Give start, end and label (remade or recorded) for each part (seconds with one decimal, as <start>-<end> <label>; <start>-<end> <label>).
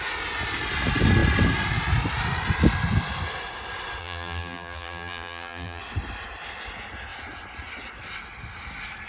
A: 0.0-4.0 recorded; 4.0-5.8 remade; 5.8-9.1 recorded